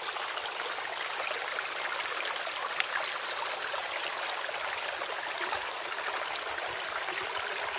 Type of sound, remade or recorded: recorded